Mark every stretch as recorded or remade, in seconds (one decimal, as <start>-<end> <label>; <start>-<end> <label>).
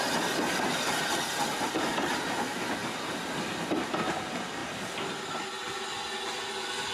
0.0-6.9 recorded